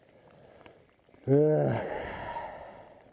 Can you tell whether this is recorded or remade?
recorded